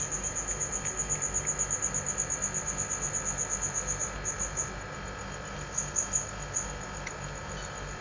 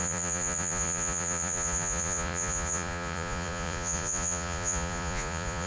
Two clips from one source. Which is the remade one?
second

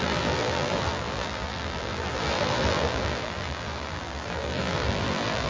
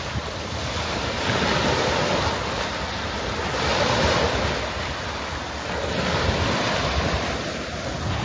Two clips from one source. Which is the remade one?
first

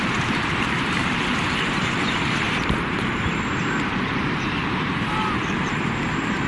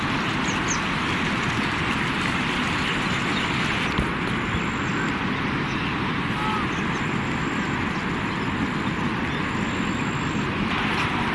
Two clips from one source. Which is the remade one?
first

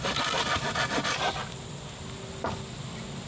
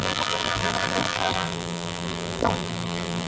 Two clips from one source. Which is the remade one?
second